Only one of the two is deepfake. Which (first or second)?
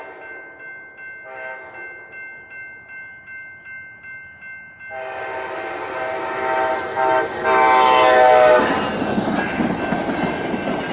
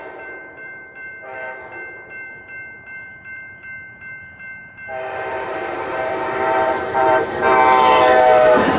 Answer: second